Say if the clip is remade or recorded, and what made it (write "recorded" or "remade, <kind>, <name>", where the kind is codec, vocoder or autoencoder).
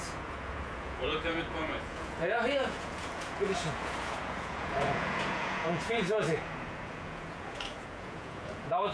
remade, vocoder, Vocos